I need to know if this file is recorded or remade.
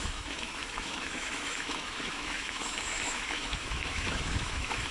remade